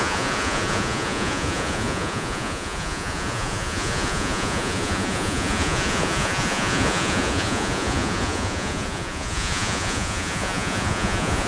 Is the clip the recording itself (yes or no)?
no